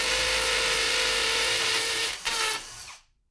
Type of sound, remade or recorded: remade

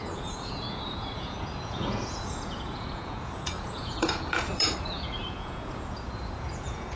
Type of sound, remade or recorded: remade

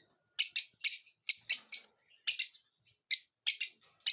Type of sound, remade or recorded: recorded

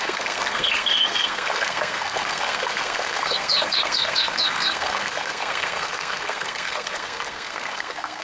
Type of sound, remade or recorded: remade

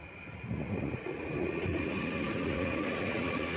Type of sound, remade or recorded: remade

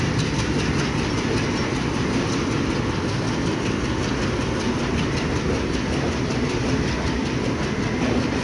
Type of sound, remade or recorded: recorded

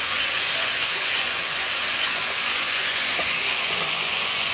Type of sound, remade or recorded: remade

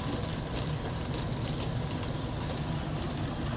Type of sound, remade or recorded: recorded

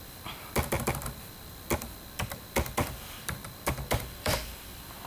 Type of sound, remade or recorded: remade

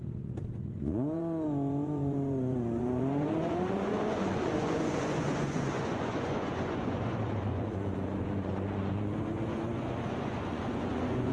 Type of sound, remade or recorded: remade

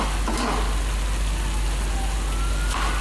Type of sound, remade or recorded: recorded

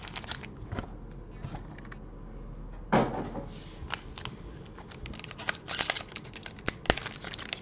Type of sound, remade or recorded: recorded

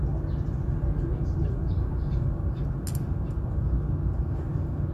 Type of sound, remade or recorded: recorded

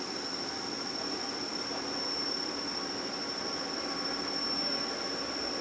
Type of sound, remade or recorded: recorded